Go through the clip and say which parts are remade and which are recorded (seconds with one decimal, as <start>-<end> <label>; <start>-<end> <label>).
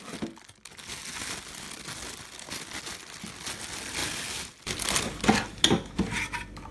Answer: 0.0-6.7 recorded